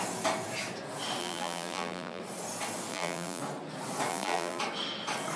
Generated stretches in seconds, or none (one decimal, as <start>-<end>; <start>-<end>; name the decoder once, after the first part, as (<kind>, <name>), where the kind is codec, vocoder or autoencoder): 1.2-2.2 (vocoder, BigVGAN v2); 2.9-3.4; 4.1-4.6

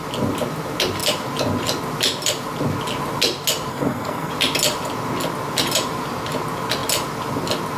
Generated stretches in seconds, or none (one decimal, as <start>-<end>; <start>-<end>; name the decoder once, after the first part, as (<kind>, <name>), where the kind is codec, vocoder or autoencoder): 3.7-4.3 (codec, SNAC)

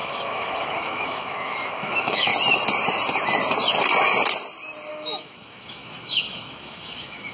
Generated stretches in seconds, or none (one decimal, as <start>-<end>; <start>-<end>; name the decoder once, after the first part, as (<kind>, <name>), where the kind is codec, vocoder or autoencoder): 0.0-2.3 (autoencoder, DAC-VAE); 4.9-7.3

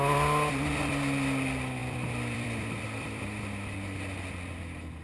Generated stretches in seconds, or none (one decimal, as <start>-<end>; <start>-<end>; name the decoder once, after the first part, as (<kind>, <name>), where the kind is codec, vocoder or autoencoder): 1.8-3.4 (vocoder, BigVGAN v2)